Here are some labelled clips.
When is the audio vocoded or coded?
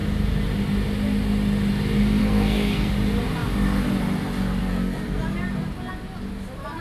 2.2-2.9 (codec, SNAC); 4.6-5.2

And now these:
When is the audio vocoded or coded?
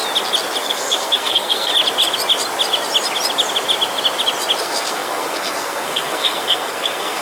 0.6-1.7 (codec, SNAC); 4.6-7.2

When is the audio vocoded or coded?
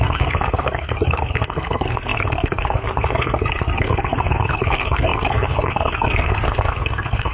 0.0-7.3 (codec, SNAC)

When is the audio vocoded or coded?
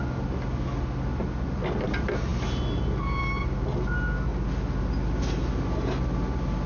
none